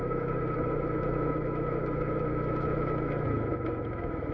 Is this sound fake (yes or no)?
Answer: yes